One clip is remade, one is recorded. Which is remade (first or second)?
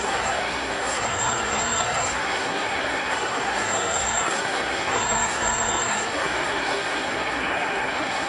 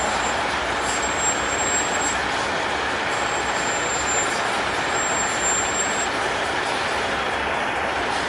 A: first